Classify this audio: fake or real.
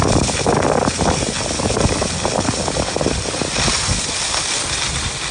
real